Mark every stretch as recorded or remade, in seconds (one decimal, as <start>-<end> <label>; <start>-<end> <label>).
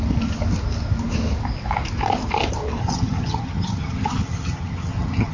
0.0-2.8 recorded; 2.8-5.3 remade